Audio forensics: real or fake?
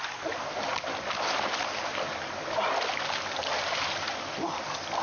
real